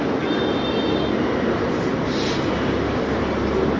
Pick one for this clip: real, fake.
real